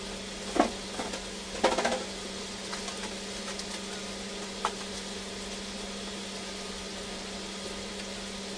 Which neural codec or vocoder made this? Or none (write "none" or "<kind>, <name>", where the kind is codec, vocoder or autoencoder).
none